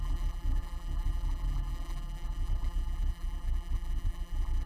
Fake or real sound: fake